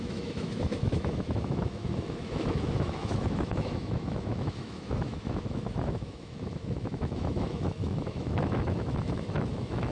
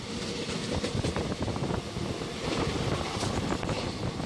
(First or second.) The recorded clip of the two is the second